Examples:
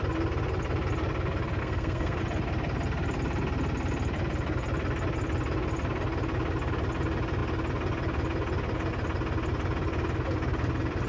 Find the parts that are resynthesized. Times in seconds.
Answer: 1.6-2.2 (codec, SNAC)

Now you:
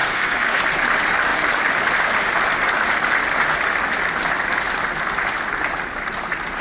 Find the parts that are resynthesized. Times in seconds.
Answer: 0.0-0.6 (codec, SNAC)